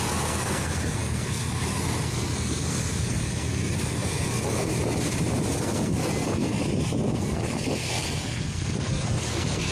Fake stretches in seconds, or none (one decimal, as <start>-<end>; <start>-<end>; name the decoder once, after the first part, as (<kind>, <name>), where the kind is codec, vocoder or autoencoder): 0.0-4.7 (codec, SNAC); 5.6-6.6; 7.1-9.7